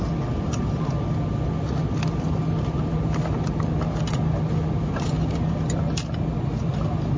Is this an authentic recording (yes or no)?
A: yes